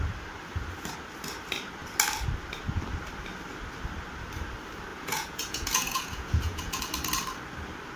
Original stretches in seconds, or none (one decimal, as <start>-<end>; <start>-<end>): 0.0-4.9; 6.8-8.0